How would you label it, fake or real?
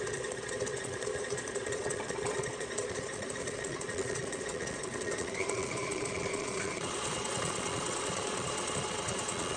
fake